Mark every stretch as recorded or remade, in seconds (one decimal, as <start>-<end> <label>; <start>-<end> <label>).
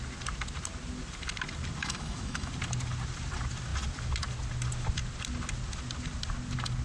0.0-1.8 recorded; 1.8-2.5 remade; 2.5-6.8 recorded